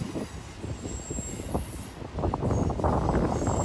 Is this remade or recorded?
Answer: recorded